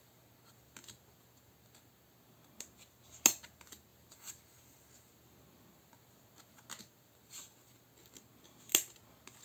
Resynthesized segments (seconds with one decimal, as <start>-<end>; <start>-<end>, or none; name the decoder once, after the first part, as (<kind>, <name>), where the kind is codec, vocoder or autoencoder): none